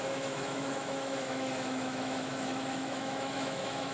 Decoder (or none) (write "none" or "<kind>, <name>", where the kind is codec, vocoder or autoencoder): autoencoder, DAC-VAE